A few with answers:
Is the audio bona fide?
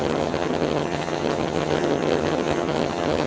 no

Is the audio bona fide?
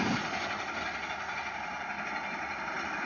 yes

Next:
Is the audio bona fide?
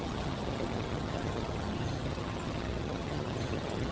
no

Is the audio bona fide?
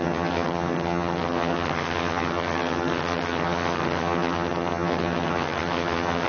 no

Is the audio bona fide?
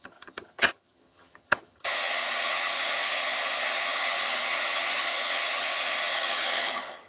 no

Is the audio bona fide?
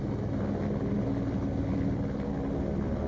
yes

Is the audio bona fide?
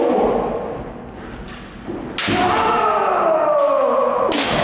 yes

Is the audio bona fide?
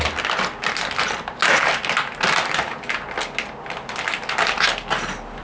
yes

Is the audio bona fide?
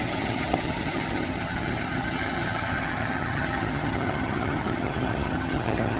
no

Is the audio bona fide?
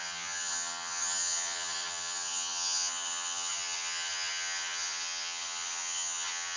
no